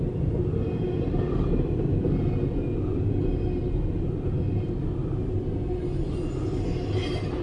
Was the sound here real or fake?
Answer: real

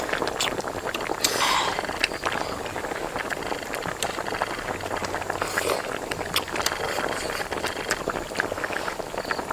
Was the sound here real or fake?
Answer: real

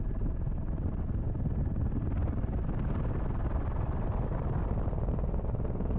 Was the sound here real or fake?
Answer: real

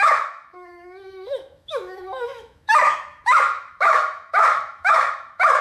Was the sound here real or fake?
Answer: fake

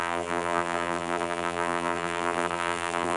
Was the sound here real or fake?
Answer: fake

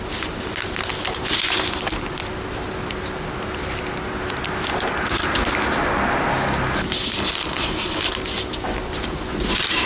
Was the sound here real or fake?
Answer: real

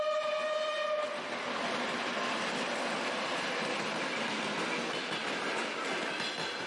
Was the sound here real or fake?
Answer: real